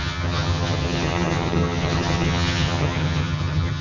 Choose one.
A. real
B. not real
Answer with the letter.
B